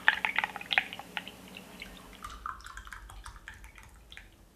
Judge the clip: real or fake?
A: fake